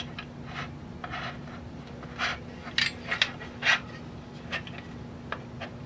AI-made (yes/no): no